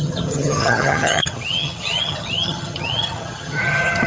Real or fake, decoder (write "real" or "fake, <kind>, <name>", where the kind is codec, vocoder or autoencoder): fake, vocoder, HiFi-GAN